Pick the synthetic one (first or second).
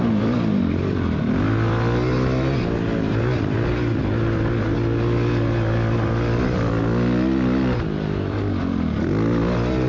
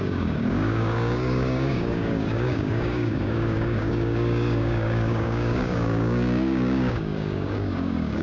second